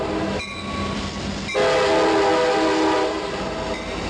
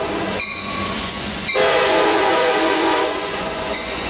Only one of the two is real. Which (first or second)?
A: first